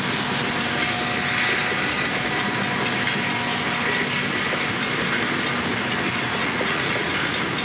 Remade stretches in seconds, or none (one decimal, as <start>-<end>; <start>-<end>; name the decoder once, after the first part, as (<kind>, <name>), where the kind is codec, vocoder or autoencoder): 6.4-7.1 (vocoder, Vocos)